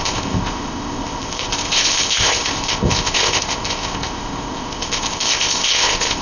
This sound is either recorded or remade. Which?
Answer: remade